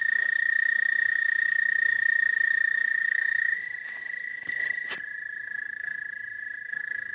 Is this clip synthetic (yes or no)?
yes